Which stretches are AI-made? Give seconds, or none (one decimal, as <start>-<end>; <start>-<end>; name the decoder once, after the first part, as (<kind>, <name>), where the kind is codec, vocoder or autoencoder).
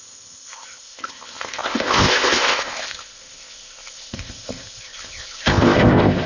0.0-6.3 (codec, ZipCodec)